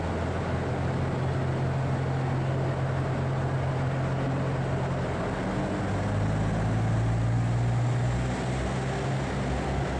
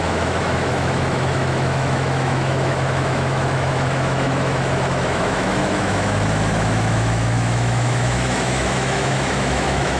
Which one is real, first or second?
first